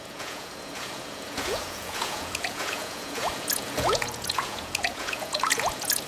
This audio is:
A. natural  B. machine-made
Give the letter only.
B